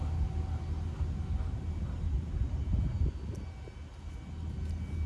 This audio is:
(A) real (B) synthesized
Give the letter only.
A